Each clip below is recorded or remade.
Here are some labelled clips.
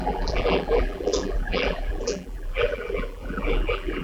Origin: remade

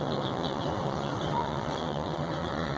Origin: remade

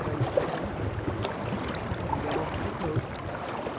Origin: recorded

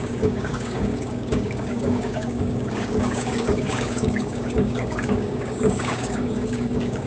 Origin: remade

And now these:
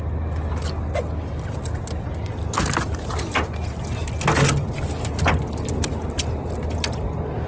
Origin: recorded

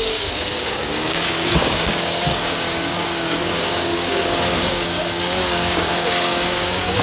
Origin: remade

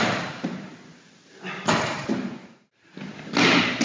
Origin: recorded